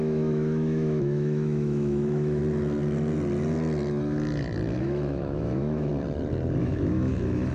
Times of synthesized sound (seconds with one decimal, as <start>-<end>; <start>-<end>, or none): 0.0-2.4; 4.8-5.9; 6.6-7.5